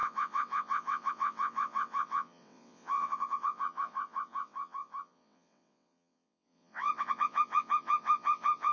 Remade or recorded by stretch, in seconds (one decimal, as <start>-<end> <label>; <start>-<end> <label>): 0.0-8.7 remade